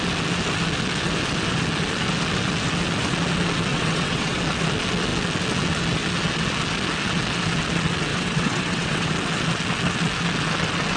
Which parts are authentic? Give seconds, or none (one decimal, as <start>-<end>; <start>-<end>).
0.0-3.7; 4.4-8.1; 9.1-11.0

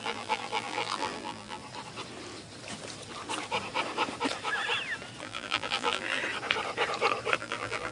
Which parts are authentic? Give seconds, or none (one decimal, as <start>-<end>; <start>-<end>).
1.6-5.2; 6.2-7.4

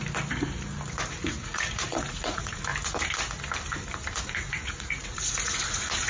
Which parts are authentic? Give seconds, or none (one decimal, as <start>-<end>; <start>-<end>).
0.0-1.1; 2.7-4.2

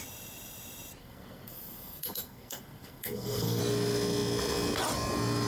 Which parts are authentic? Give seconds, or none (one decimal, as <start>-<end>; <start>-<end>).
0.0-1.0; 3.6-5.5

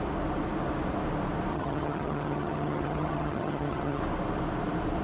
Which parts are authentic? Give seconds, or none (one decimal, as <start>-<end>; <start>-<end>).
0.0-1.5; 4.0-5.0

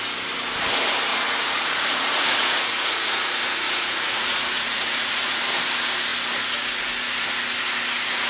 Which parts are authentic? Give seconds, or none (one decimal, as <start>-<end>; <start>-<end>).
0.0-1.1; 5.4-8.3

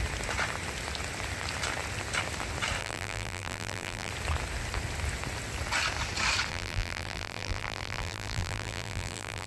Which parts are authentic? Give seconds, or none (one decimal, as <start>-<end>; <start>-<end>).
0.0-2.8; 4.1-6.5